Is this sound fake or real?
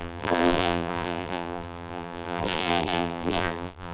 fake